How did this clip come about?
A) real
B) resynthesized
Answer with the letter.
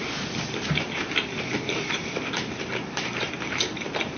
B